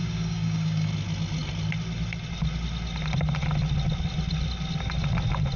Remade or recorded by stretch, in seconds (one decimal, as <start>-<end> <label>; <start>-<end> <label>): 0.0-0.9 remade; 0.9-5.6 recorded